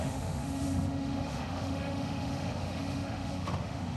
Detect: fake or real fake